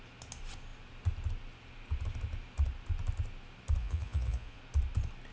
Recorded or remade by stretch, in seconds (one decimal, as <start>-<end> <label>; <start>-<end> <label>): 0.0-3.8 recorded; 3.8-4.6 remade; 4.6-5.3 recorded